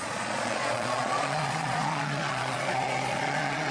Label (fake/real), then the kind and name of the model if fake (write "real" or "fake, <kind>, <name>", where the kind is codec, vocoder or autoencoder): fake, vocoder, Vocos